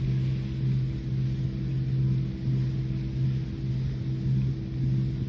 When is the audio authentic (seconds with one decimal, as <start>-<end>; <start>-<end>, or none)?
0.0-5.3